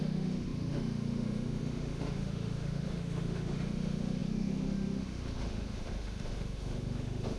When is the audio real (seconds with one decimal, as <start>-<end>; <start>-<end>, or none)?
none